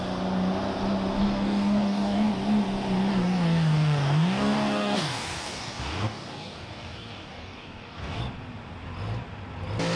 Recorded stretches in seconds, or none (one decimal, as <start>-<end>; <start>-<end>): 0.0-1.2; 2.3-3.1; 8.2-10.0